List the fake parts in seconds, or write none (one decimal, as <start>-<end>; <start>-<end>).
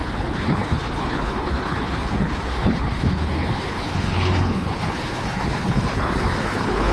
0.0-6.9